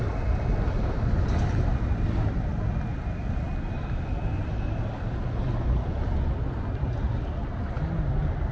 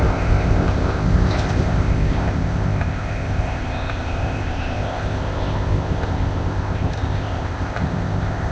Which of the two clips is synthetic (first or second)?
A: second